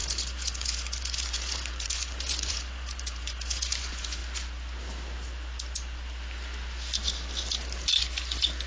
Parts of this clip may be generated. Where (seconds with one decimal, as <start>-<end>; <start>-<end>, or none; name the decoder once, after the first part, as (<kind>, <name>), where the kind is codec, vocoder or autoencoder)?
0.0-4.2 (vocoder, Vocos)